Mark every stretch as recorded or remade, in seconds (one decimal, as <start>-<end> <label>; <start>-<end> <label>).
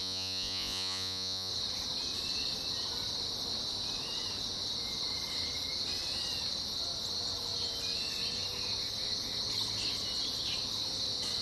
0.0-1.5 remade; 1.5-11.4 recorded